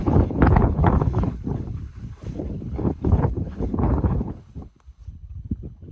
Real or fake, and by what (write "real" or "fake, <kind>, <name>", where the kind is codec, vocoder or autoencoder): fake, codec, HILCodec